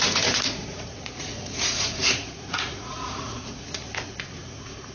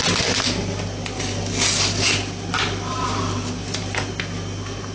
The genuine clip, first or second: second